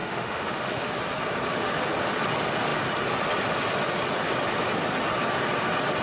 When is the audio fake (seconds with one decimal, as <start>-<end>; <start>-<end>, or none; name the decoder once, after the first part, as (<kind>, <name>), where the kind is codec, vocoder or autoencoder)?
0.0-0.9 (autoencoder, DAC-VAE)